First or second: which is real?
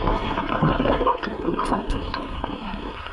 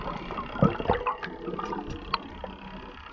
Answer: second